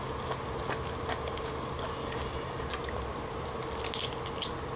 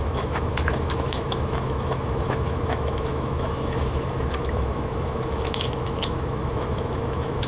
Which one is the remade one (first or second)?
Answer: second